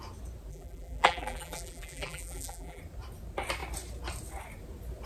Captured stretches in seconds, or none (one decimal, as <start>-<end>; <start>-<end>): 0.0-0.5; 2.8-5.1